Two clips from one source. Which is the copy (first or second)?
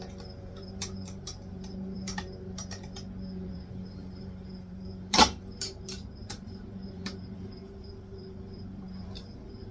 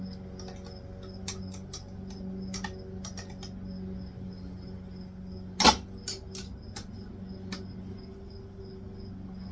first